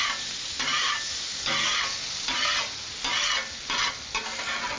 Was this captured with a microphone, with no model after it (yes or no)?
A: yes